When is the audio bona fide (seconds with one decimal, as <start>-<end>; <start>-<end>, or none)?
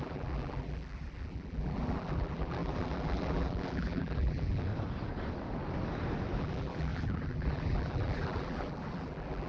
4.7-6.4